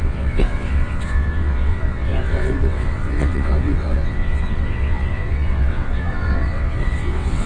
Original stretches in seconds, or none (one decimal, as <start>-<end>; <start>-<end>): none